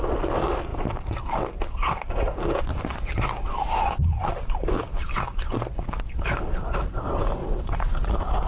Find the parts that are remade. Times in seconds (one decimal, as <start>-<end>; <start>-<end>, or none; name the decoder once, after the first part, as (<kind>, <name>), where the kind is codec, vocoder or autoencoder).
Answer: 7.4-8.1 (vocoder, WaveNeXt)